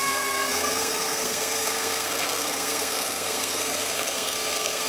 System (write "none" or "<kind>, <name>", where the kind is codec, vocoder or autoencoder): codec, SNAC